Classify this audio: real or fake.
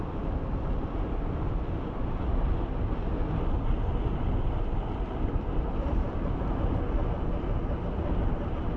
real